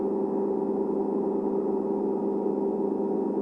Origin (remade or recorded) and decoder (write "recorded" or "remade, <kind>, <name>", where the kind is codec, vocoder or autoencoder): recorded